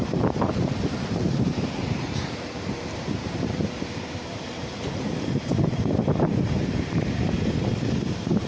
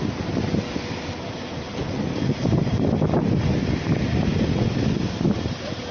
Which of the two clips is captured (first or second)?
second